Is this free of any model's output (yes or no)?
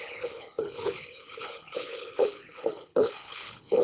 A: no